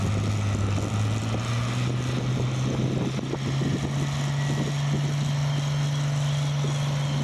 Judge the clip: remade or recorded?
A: recorded